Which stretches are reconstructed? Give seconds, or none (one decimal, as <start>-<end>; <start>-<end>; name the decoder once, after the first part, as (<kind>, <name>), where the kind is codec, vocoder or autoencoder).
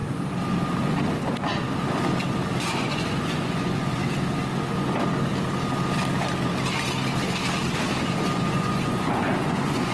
2.6-4.0 (vocoder, Vocos); 8.1-9.9